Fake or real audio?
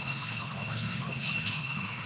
fake